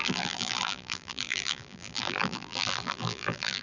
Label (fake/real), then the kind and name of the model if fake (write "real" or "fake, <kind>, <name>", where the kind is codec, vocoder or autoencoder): fake, vocoder, BigVGAN v2